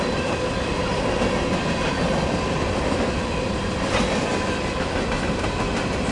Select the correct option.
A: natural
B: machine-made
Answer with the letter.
A